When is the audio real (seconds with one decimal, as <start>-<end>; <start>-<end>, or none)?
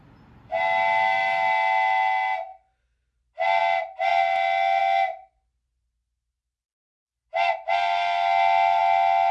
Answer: 0.0-9.3